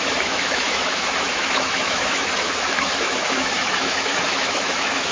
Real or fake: fake